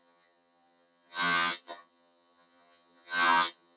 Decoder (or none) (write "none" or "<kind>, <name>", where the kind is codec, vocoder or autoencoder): vocoder, HiFi-GAN